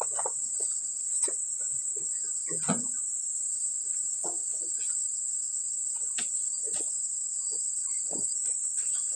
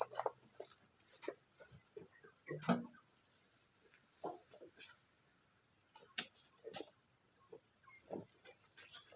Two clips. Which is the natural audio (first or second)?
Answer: second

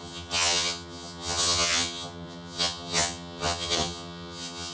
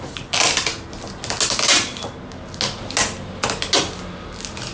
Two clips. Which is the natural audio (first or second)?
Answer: second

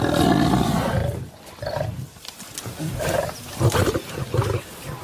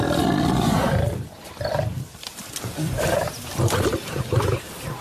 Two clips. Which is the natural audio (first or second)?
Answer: first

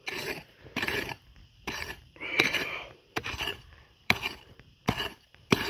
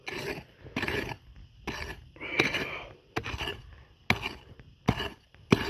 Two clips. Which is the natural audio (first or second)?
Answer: second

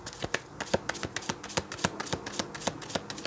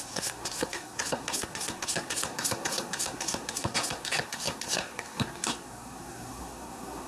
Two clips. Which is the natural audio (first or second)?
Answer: first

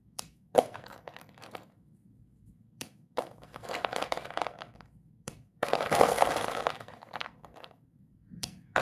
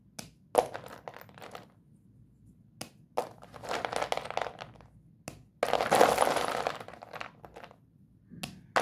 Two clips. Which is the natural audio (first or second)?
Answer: second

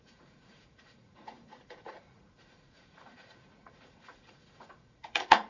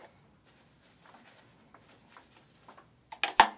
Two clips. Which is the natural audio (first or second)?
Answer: second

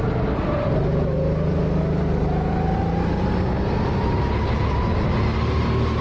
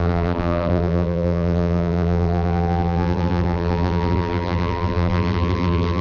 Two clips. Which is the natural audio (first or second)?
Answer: first